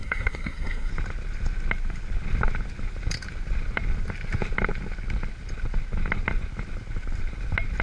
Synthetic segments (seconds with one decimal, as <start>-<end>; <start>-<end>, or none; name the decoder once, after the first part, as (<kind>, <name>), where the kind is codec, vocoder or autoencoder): 0.0-0.9 (codec, SNAC)